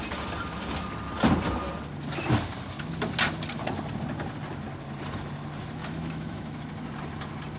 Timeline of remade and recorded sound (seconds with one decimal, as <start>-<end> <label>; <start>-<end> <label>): 0.0-5.8 recorded; 5.8-6.6 remade; 6.6-7.6 recorded